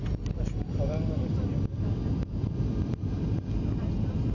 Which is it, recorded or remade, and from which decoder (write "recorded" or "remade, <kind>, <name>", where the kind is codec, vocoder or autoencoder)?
remade, vocoder, BigVGAN v2